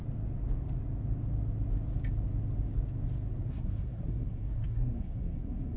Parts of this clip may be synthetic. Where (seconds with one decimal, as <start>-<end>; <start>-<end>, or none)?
3.5-5.8